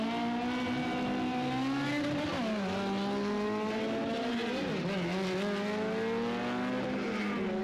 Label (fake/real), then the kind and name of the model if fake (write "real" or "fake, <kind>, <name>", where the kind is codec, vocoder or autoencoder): real